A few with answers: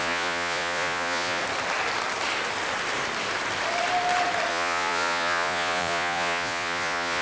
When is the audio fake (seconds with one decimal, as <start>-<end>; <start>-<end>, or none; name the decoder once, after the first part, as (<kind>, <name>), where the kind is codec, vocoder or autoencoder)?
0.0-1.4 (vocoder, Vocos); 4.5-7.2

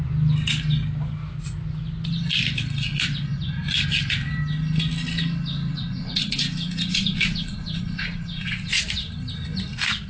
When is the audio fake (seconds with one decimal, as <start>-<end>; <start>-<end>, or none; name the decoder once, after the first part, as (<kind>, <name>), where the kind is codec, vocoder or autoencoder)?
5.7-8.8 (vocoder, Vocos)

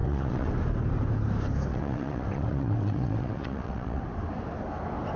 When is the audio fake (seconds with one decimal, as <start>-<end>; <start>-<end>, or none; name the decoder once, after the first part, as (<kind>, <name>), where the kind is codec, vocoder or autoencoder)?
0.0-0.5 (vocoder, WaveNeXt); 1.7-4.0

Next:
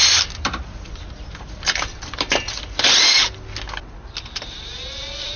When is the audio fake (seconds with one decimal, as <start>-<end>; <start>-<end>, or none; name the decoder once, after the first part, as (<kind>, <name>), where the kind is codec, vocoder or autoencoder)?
0.0-3.0 (vocoder, BigVGAN v2)

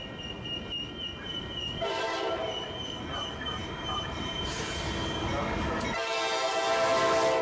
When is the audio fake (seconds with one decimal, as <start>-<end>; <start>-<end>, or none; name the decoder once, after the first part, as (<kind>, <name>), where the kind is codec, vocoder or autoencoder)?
1.3-4.8 (vocoder, BigVGAN v2)